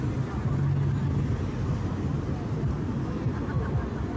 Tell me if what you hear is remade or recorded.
recorded